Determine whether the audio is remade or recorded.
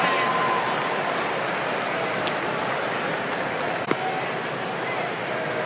recorded